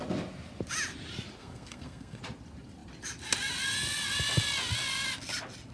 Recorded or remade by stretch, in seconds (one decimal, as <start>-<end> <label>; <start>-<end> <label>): 0.0-1.4 recorded; 1.4-2.2 remade; 2.2-5.7 recorded

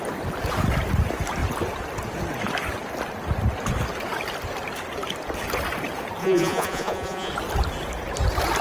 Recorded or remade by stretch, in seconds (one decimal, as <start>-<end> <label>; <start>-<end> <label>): 0.0-6.2 recorded; 6.2-7.3 remade; 7.3-8.6 recorded

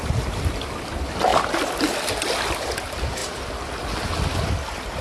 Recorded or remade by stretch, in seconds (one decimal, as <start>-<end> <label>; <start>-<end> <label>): 0.0-1.3 remade; 1.3-2.1 recorded; 2.1-3.2 remade; 3.2-4.4 recorded; 4.4-5.0 remade

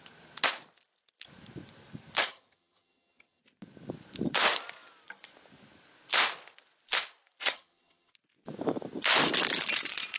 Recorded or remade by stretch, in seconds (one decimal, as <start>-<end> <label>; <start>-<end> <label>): 0.0-2.2 recorded; 2.2-3.4 remade; 3.4-7.4 recorded; 7.4-8.1 remade; 8.1-10.2 recorded

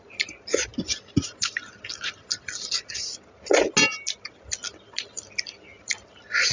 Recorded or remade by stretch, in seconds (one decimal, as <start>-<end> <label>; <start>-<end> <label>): 0.0-6.5 recorded